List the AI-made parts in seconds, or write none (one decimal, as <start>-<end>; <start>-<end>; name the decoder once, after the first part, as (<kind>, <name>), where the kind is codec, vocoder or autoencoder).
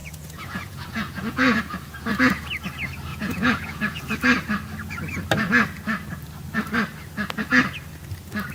0.0-1.6 (vocoder, Vocos); 3.1-4.0